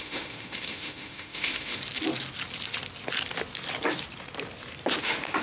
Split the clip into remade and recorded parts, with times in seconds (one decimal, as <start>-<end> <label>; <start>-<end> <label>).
0.0-1.8 remade; 1.8-5.0 recorded; 5.0-5.4 remade